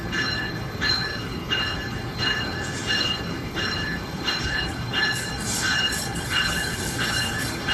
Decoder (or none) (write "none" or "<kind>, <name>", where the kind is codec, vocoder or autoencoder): codec, HILCodec